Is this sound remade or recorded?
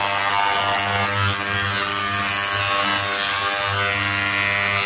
recorded